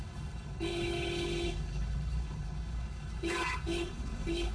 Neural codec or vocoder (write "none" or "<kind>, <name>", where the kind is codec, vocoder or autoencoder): codec, HILCodec